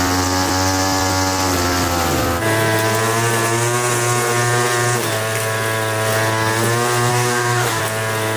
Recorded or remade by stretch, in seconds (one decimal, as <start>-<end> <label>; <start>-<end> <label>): 0.0-7.1 recorded; 7.1-7.8 remade; 7.8-8.4 recorded